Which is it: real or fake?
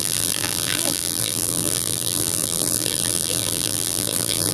fake